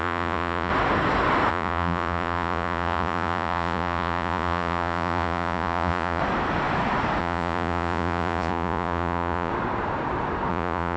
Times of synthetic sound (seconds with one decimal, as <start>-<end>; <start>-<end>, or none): 0.0-0.7; 1.5-6.2; 7.2-9.5; 10.5-11.0